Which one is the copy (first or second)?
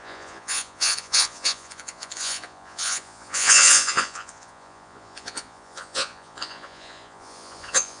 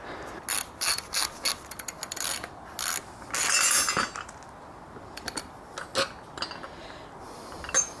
first